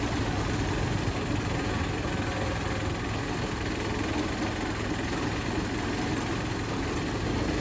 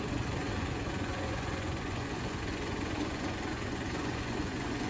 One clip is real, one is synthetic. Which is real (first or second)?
first